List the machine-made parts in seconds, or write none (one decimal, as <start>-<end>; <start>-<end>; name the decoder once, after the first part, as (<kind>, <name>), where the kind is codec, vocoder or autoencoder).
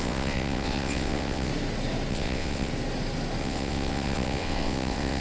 0.0-1.5 (vocoder, WaveNeXt); 2.1-2.7; 3.4-5.2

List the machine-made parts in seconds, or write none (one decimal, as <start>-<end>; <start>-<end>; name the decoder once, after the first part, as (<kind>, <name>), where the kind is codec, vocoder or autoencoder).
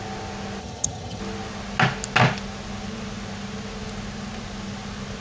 0.6-1.2 (vocoder, HiFi-GAN)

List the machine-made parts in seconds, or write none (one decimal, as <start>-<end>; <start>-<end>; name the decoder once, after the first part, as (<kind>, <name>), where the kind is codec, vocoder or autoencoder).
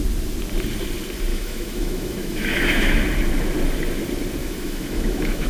1.3-3.0 (autoencoder, DAC-VAE); 4.4-5.5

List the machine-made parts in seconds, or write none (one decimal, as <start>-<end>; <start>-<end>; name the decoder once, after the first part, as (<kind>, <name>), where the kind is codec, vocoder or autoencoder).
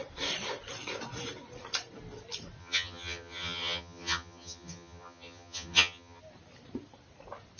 2.6-6.2 (vocoder, HiFi-GAN)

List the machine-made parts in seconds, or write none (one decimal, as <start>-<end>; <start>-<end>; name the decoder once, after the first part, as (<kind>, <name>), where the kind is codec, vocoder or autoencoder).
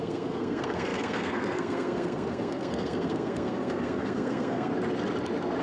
0.0-4.7 (codec, SNAC)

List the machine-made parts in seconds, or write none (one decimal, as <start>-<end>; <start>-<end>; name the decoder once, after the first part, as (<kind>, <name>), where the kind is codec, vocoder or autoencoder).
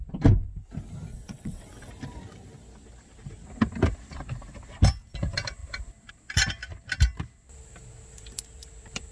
1.1-1.9 (vocoder, WaveNeXt)